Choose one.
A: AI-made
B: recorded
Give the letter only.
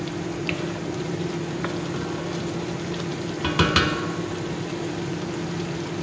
B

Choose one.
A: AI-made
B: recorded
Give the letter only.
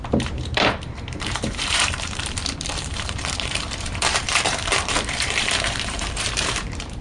A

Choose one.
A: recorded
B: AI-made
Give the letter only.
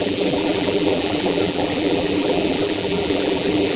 B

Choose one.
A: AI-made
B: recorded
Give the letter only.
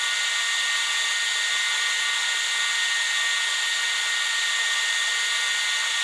B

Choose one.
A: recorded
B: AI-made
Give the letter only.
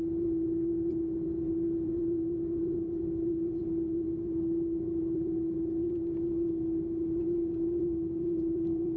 B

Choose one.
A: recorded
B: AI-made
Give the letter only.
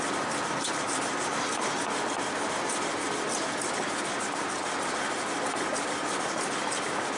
A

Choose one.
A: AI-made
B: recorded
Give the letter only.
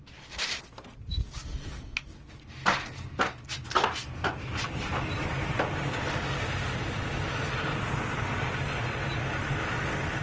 B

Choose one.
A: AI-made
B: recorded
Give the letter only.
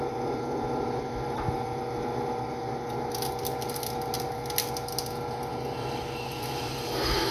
B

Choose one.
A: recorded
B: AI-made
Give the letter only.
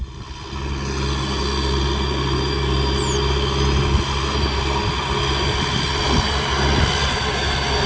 A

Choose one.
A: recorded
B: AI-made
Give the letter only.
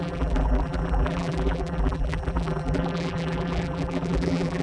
B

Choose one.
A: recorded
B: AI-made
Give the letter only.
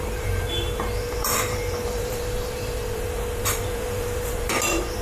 B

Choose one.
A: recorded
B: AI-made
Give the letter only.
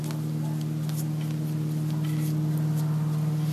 A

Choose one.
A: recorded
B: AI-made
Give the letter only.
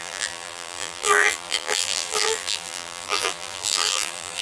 B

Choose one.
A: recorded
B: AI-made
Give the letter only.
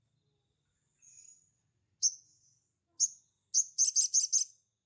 A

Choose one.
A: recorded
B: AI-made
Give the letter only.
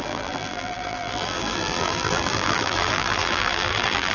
B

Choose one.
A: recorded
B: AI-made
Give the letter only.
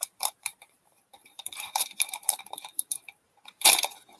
B